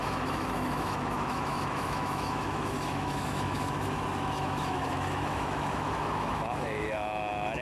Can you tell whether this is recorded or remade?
remade